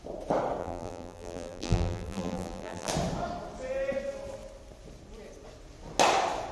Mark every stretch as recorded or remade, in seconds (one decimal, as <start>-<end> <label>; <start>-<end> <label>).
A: 0.0-0.6 recorded; 0.6-2.9 remade; 2.9-6.5 recorded